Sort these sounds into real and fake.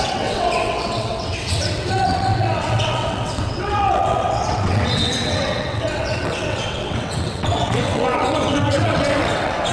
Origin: fake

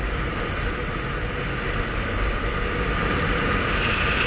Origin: real